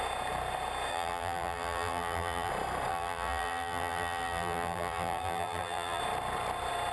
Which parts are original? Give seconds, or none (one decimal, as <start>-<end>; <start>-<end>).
0.0-0.9; 2.5-2.9; 6.0-6.9